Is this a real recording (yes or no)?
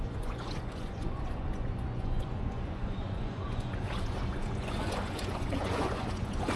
no